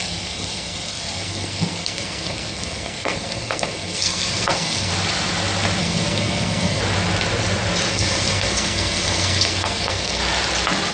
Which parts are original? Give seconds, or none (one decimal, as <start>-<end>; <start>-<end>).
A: 4.9-5.8; 6.8-7.9; 10.2-10.9